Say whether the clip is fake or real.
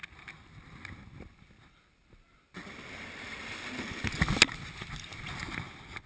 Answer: real